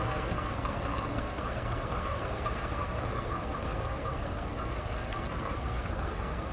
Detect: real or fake fake